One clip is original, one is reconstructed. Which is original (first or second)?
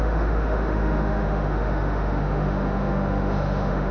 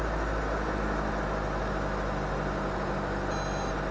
second